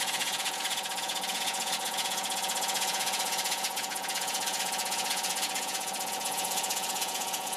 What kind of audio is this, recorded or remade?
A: remade